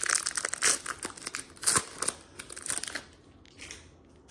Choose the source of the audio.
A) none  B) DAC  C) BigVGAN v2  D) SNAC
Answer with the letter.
A